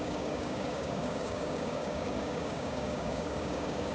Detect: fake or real fake